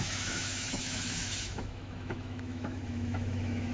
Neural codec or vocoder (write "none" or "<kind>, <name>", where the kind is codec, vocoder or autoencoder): autoencoder, DAC-VAE